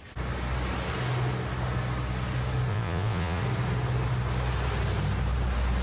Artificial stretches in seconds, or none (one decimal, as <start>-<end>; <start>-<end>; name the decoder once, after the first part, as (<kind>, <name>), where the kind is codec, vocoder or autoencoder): 2.7-3.4 (vocoder, Vocos)